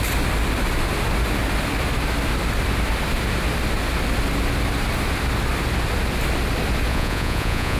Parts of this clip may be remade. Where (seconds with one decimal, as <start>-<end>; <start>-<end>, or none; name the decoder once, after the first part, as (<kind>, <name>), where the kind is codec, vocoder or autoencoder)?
6.9-7.8 (vocoder, Vocos)